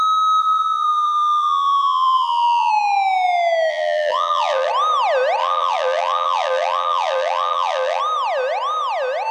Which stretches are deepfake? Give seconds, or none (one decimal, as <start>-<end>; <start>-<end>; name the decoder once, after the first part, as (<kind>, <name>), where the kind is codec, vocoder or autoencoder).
0.4-2.7 (vocoder, BigVGAN v2); 3.7-4.7; 5.4-8.0